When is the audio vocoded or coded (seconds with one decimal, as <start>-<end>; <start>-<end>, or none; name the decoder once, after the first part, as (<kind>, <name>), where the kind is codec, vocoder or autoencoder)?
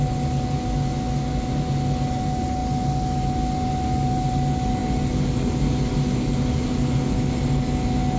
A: none